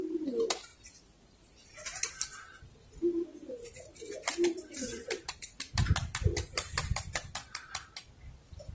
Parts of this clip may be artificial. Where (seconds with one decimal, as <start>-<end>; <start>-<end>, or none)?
0.7-5.3; 6.3-8.1